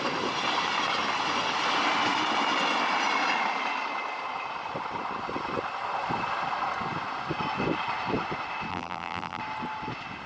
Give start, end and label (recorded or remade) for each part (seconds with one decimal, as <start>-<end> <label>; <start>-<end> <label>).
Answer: 0.0-8.7 recorded; 8.7-9.4 remade; 9.4-10.3 recorded